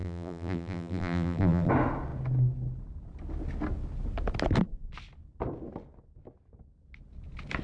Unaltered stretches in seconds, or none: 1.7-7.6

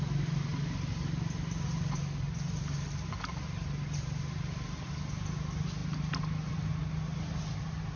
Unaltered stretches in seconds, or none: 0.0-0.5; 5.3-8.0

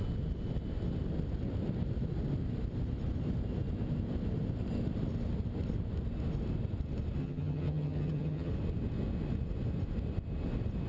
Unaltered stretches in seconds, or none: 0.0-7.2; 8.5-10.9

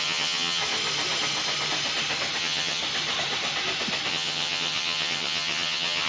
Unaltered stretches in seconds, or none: 0.6-2.4; 2.8-4.1